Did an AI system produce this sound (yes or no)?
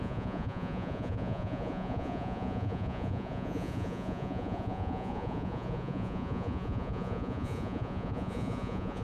yes